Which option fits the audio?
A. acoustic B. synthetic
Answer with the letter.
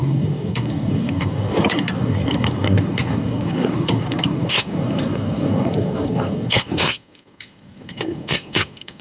B